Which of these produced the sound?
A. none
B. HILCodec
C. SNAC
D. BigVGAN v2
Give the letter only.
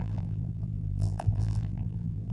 D